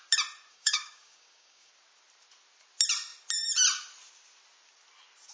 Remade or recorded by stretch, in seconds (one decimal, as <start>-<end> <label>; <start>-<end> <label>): 0.0-0.5 recorded; 0.5-1.7 remade; 1.7-5.3 recorded

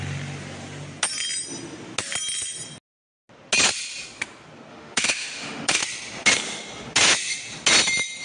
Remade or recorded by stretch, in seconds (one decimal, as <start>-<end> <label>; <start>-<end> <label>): 0.0-4.7 recorded; 4.7-5.8 remade; 5.8-8.2 recorded

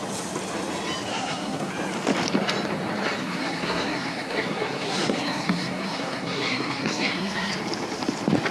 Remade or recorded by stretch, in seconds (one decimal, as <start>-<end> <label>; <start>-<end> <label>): 0.0-1.1 recorded; 1.1-1.7 remade; 1.7-3.2 recorded; 3.2-7.5 remade; 7.5-8.5 recorded

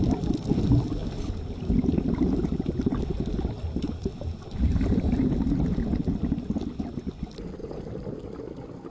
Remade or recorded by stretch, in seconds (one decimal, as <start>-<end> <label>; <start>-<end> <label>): 0.0-7.6 recorded; 7.6-8.1 remade; 8.1-8.9 recorded

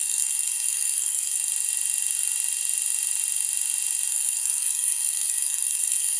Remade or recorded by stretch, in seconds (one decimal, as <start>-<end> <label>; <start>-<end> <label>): 0.0-1.5 remade; 1.5-4.1 recorded; 4.1-6.2 remade

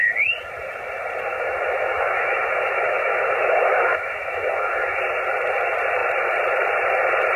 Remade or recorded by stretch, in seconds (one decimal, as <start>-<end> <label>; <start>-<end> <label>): 0.0-1.3 recorded; 1.3-4.9 remade; 4.9-7.4 recorded

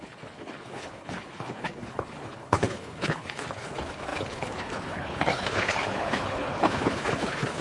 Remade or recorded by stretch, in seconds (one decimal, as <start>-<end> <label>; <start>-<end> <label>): 0.0-7.6 remade